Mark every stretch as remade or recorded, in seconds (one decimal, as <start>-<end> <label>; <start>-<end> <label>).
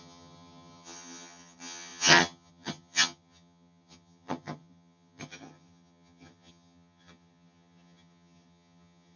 0.0-9.2 remade